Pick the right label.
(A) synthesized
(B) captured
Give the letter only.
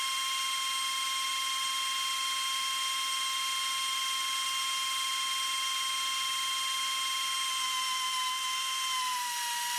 B